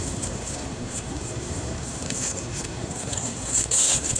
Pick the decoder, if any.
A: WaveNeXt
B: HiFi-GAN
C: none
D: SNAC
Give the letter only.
D